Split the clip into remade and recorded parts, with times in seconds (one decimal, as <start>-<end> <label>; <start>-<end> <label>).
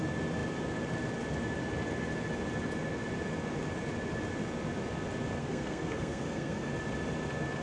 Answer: 0.0-5.4 recorded; 5.4-6.7 remade; 6.7-7.6 recorded